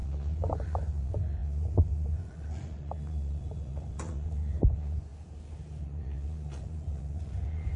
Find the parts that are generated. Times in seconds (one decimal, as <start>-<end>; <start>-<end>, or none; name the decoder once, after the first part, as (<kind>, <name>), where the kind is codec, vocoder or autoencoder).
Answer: 0.0-5.1 (vocoder, Vocos); 5.8-7.8